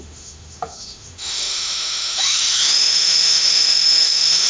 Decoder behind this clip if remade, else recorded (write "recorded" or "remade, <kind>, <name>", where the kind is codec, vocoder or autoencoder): remade, autoencoder, DAC-VAE